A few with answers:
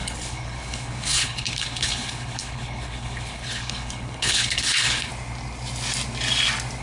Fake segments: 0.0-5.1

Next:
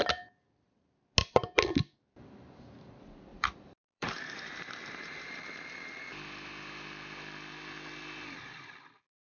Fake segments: 3.3-5.3

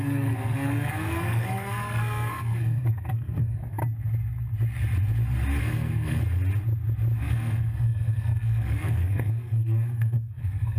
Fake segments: 0.0-3.8; 5.6-6.2; 7.2-10.8